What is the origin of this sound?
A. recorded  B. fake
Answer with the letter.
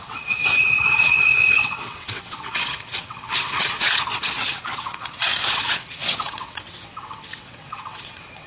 B